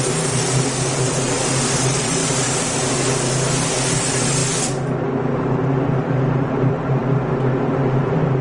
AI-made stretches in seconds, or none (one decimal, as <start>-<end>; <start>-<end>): 0.0-2.2; 4.0-4.4; 5.3-7.0; 7.7-8.4